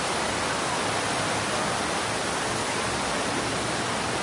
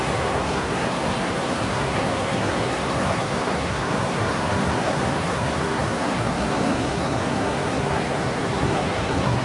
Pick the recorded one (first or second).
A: first